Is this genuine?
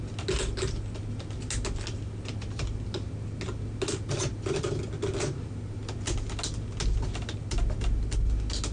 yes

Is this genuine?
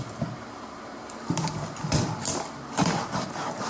no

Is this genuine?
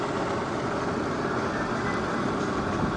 yes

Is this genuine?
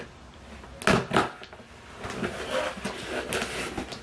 yes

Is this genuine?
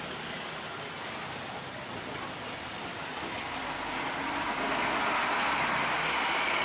yes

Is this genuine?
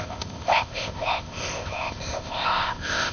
no